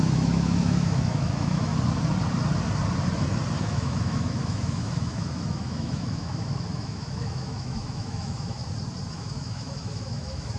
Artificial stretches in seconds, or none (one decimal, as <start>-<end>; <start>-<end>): 0.0-1.7; 3.6-8.6; 9.1-10.6

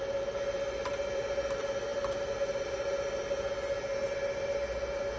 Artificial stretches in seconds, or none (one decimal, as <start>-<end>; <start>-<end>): none

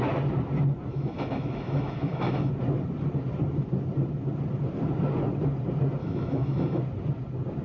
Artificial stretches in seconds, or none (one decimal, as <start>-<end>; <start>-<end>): 0.9-2.5; 6.0-6.8

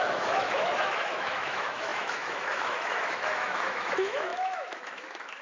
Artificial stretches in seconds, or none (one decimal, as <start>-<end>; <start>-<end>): 0.0-5.4

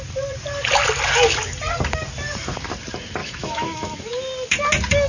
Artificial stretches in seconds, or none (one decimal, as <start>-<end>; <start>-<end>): 3.2-4.0

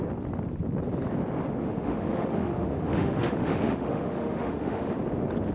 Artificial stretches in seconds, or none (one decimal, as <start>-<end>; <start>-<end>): 1.6-4.9

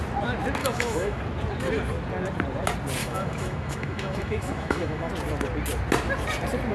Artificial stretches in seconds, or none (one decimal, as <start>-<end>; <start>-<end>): 0.6-1.2; 3.0-5.1

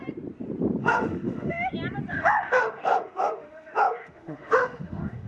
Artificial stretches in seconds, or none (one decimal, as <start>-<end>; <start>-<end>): 0.8-1.7; 2.1-5.3